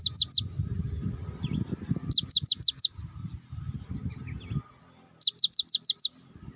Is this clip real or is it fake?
real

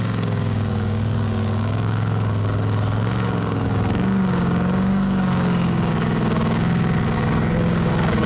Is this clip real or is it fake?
fake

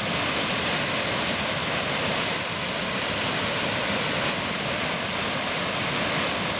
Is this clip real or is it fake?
real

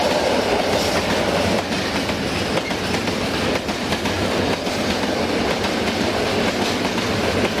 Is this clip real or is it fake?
real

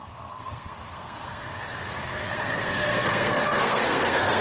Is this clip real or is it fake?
fake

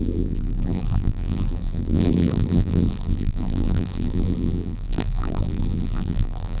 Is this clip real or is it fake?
fake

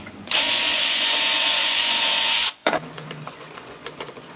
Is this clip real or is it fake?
fake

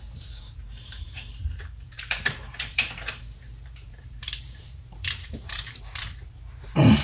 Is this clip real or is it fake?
fake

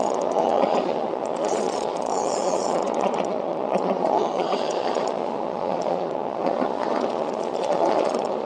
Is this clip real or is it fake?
fake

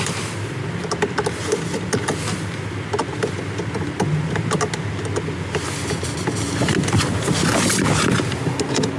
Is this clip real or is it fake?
real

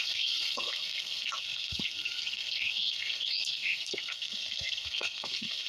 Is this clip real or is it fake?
fake